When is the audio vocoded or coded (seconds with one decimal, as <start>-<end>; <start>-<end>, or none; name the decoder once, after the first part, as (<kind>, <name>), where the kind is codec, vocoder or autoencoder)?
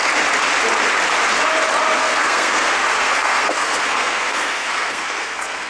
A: 2.0-5.7 (codec, SNAC)